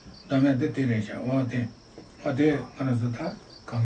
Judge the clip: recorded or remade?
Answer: recorded